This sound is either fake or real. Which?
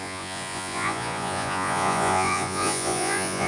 fake